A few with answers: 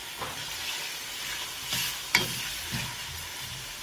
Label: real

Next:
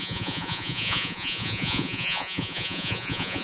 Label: fake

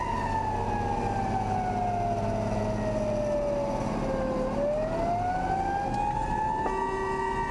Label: real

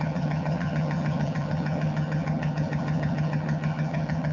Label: fake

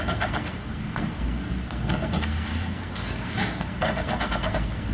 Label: fake